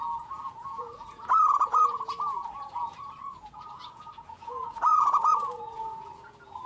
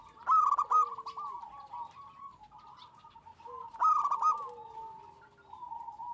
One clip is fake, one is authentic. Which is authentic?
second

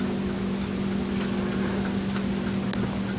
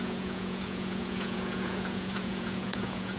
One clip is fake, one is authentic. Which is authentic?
first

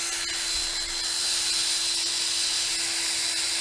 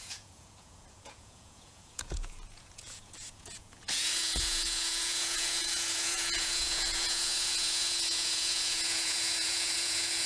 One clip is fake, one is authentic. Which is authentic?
first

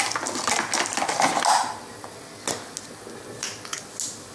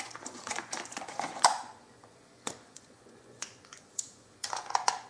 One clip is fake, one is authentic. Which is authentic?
first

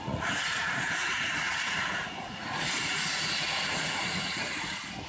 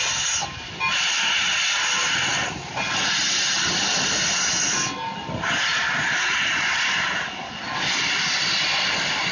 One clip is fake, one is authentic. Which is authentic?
second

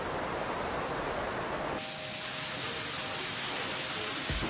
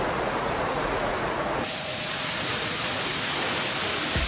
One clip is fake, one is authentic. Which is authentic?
first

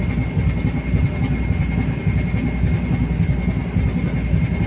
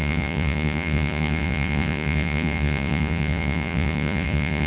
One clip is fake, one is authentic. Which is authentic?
first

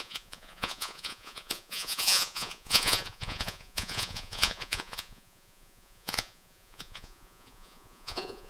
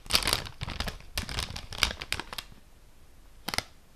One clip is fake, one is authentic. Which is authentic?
second